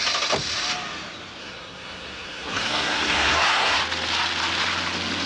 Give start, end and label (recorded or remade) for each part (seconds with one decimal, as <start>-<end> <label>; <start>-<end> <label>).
0.0-1.4 recorded; 1.4-3.8 remade; 3.8-5.3 recorded